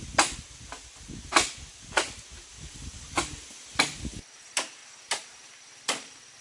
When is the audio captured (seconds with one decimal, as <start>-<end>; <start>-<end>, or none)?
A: 0.0-6.4